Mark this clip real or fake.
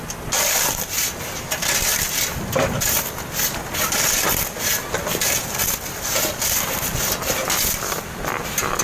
real